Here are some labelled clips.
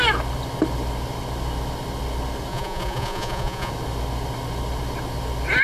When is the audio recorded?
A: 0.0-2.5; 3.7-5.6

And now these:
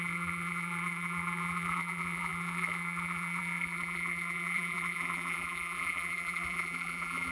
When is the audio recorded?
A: none

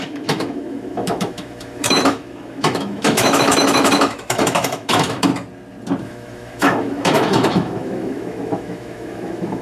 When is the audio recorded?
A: 5.3-6.0

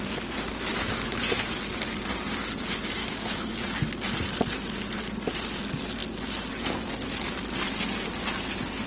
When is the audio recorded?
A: 0.0-0.7; 1.6-3.0; 3.5-8.9

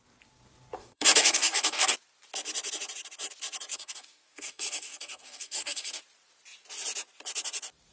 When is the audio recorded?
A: 0.0-0.8; 1.9-3.7; 6.0-7.9